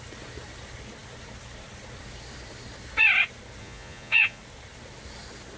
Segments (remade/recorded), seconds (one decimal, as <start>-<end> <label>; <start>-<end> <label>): 0.0-3.6 recorded; 3.6-4.4 remade; 4.4-5.6 recorded